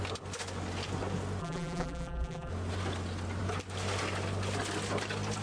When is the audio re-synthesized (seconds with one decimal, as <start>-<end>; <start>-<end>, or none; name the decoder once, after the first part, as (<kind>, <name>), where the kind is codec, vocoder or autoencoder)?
1.4-2.5 (vocoder, BigVGAN v2)